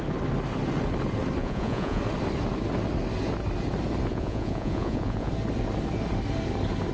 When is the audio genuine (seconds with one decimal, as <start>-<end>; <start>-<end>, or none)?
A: 0.0-1.4; 2.0-4.1; 5.3-6.9